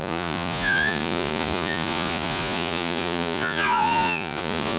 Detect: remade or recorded remade